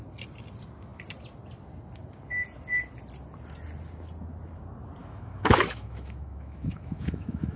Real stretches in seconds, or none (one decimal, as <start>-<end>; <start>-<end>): 0.0-5.0